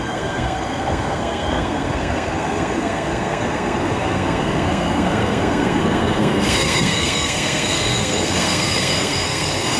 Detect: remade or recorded remade